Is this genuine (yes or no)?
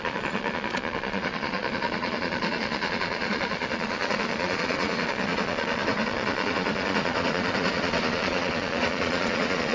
no